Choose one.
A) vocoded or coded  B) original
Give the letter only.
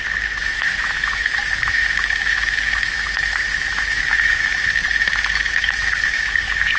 A